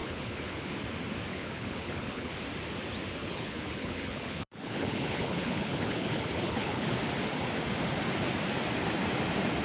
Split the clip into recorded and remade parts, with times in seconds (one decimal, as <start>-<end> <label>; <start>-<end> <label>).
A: 0.0-0.7 remade; 0.7-1.3 recorded; 1.3-2.3 remade; 2.3-3.2 recorded; 3.2-6.9 remade; 6.9-9.6 recorded